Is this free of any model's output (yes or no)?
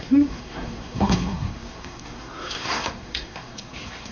no